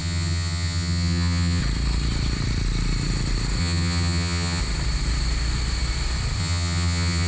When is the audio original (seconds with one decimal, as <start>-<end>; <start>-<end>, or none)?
1.6-3.6; 4.6-6.4

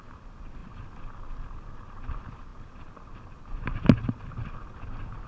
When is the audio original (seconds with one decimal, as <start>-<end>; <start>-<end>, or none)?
0.0-5.3

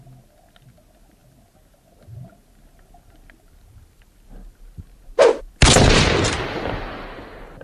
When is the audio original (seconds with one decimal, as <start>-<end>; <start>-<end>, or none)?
0.0-7.6

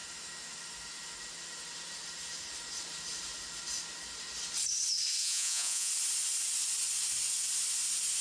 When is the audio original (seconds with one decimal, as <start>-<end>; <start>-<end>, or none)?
0.0-5.2; 5.9-8.2